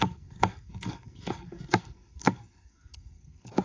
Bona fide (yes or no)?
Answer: no